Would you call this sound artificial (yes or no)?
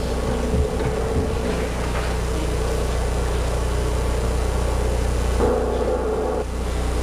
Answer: no